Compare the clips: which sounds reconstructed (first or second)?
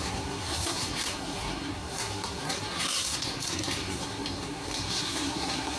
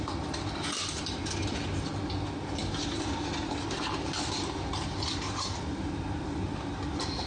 first